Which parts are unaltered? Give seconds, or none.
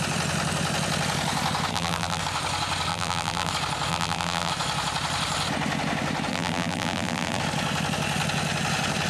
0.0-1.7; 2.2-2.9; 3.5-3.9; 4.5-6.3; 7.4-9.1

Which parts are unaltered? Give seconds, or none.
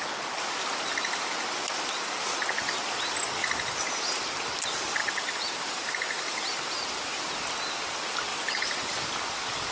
0.0-3.4; 4.0-5.0; 7.3-8.3; 8.9-9.7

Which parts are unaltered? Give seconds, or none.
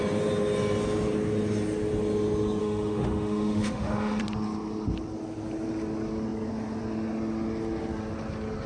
0.0-2.6; 4.2-8.7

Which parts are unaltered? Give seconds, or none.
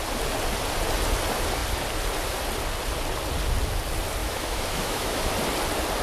0.0-4.2; 5.3-6.0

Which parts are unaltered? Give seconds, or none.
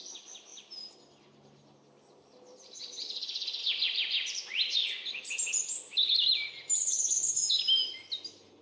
0.0-8.6